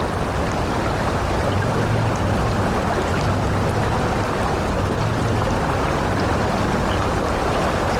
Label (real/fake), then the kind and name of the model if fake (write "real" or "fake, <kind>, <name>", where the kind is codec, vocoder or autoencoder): real